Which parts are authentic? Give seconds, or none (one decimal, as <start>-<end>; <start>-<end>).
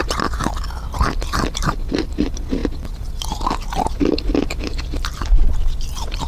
0.0-6.3